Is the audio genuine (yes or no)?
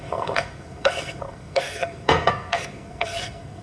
no